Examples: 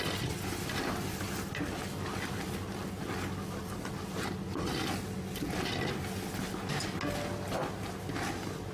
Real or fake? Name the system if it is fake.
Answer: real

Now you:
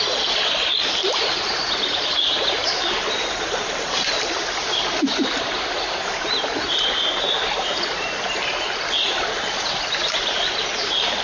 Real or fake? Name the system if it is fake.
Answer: fake, vocoder, BigVGAN v2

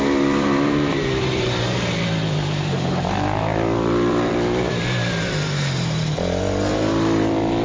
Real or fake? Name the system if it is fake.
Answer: fake, vocoder, BigVGAN v2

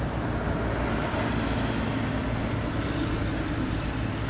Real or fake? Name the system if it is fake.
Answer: real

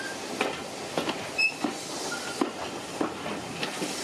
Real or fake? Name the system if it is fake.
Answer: real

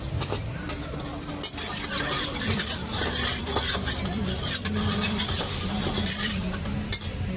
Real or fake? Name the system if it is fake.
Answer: fake, vocoder, BigVGAN v2